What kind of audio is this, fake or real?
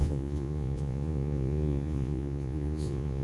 fake